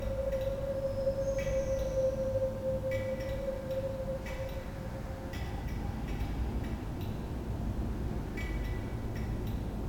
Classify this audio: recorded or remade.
recorded